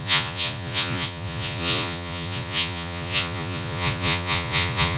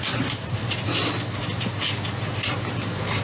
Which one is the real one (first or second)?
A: second